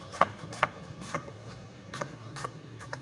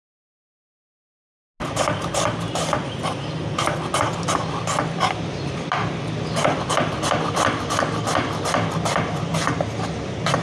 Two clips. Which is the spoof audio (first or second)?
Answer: first